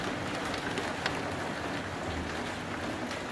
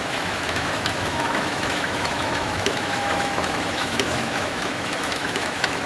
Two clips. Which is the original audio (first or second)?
first